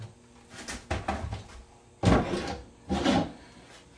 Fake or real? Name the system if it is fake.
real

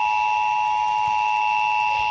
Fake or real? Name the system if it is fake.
real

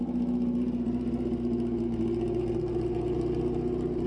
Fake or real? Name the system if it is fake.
real